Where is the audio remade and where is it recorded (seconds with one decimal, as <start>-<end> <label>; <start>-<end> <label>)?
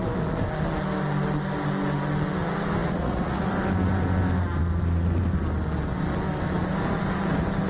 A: 0.0-2.8 recorded; 2.8-3.5 remade; 3.5-7.7 recorded